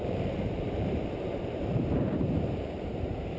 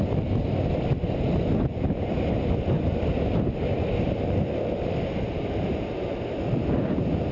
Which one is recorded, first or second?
second